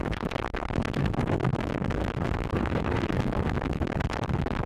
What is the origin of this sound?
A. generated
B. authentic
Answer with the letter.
A